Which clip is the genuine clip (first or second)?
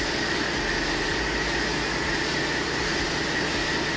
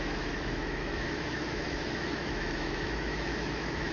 first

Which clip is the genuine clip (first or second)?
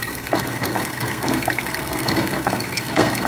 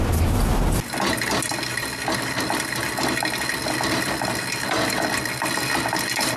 second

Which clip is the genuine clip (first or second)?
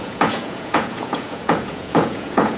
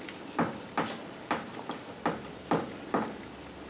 second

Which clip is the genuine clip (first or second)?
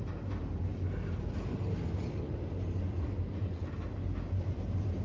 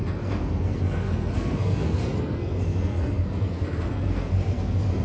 first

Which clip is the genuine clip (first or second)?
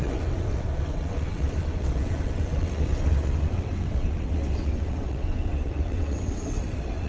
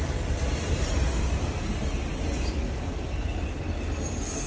second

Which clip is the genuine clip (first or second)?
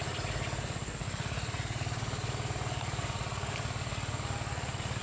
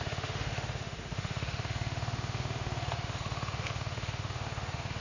first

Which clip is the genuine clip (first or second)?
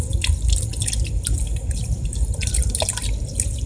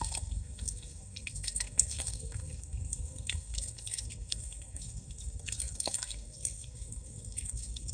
first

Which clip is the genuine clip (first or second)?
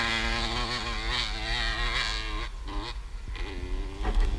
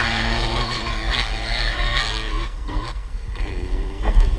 first